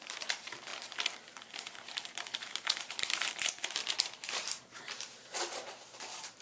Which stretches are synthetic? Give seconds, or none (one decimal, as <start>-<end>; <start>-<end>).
0.0-0.7; 1.6-6.4